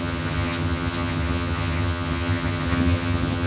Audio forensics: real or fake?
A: fake